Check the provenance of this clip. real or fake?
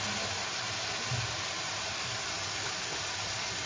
fake